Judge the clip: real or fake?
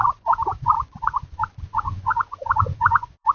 fake